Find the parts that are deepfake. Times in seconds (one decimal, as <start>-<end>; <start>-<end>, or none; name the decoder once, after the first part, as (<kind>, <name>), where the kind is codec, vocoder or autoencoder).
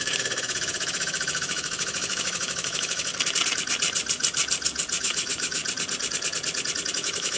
0.0-3.1 (autoencoder, DAC-VAE); 5.0-5.6; 6.9-7.4